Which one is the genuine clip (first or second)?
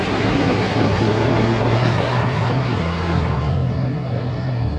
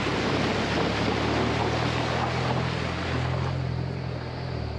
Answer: second